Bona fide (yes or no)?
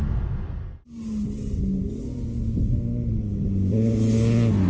yes